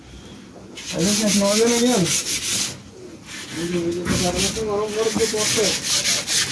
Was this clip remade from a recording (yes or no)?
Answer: no